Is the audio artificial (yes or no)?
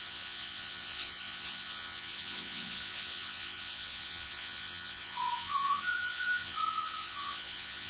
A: yes